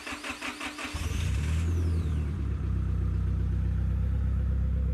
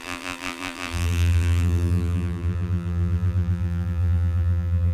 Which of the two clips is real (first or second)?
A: first